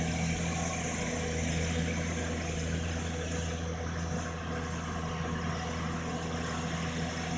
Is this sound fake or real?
real